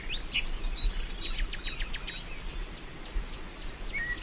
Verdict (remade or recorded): recorded